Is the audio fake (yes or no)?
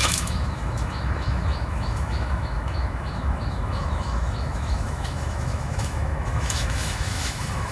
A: yes